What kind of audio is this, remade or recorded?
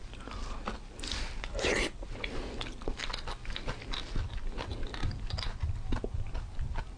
recorded